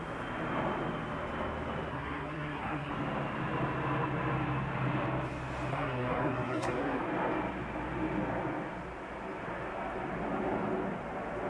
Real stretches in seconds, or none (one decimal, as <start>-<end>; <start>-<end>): 0.0-1.9; 2.9-5.7; 7.0-11.5